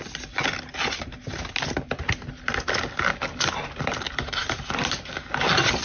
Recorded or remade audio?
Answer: recorded